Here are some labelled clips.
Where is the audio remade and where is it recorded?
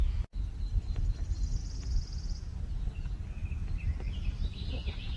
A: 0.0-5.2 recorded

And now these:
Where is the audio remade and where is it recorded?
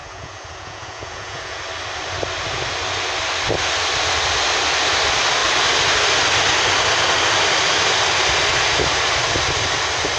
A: 0.0-1.6 remade; 1.6-10.2 recorded